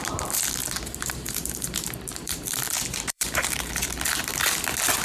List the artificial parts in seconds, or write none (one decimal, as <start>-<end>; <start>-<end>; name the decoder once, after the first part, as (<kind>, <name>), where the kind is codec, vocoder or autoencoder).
0.6-3.6 (vocoder, BigVGAN v2)